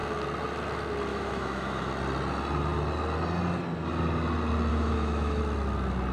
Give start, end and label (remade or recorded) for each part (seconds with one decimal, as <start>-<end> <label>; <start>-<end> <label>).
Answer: 0.0-1.1 recorded; 1.1-1.9 remade; 1.9-4.7 recorded; 4.7-5.4 remade; 5.4-6.1 recorded